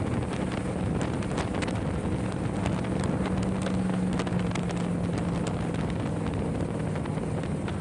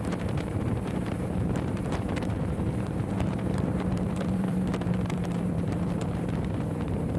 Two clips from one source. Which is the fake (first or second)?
second